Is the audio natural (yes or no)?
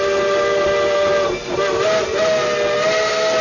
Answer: yes